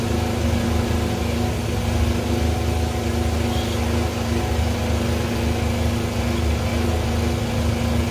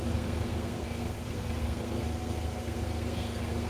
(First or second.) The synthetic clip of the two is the second